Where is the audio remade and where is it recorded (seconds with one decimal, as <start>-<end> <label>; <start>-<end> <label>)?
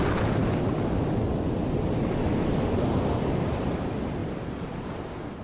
0.0-0.4 recorded; 0.4-2.0 remade; 2.0-4.2 recorded; 4.2-4.9 remade; 4.9-5.4 recorded